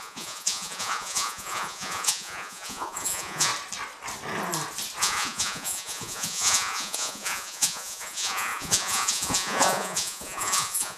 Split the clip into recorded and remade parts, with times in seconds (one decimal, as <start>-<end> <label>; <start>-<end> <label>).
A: 0.0-3.5 remade; 3.5-5.0 recorded; 5.0-11.0 remade